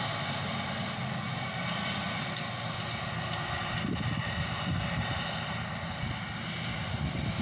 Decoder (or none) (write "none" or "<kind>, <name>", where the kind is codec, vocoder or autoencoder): none